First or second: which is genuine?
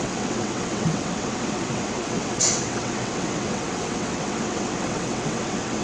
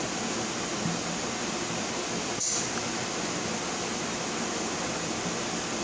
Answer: second